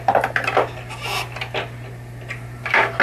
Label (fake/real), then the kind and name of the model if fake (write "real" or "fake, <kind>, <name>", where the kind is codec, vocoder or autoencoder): real